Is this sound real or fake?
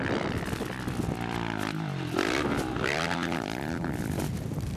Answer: fake